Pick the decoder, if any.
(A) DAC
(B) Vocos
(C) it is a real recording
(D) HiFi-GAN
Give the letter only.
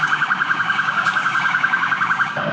A